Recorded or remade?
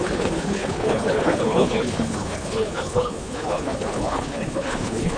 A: remade